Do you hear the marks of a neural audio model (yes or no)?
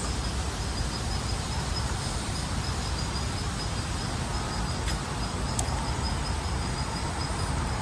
no